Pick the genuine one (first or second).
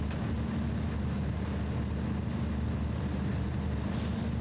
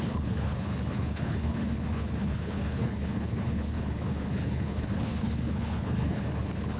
first